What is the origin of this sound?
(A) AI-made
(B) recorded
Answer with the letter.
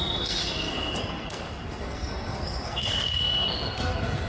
A